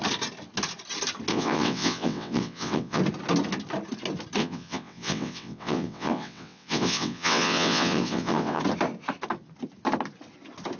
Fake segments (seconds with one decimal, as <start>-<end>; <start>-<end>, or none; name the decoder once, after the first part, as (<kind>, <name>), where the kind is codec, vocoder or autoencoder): 1.3-3.0 (vocoder, WaveNeXt); 4.4-8.6